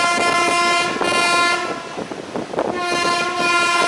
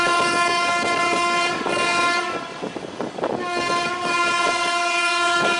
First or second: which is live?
first